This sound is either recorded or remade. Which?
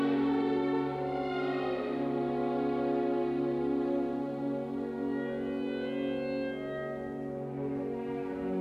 recorded